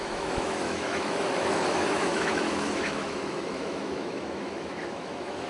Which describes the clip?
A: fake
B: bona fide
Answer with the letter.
A